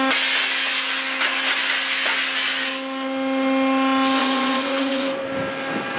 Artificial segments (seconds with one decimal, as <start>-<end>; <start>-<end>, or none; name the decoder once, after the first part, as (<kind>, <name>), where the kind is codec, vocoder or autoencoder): 4.2-5.2 (vocoder, Vocos)